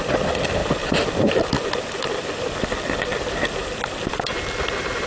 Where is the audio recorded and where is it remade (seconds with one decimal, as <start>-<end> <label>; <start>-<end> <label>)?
0.0-5.1 recorded